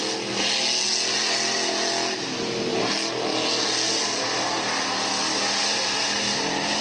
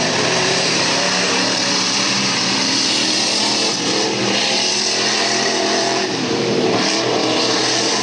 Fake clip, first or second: second